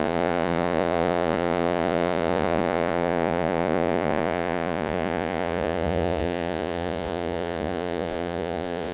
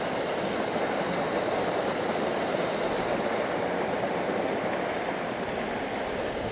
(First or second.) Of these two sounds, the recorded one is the second